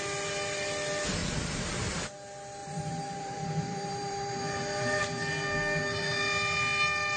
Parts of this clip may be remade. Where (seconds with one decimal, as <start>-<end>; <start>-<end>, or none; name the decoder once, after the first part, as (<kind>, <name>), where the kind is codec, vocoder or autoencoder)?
1.2-2.0 (vocoder, BigVGAN v2); 2.6-5.0